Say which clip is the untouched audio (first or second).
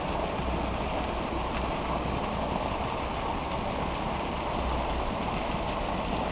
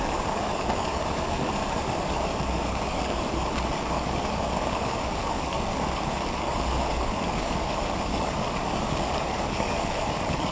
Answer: first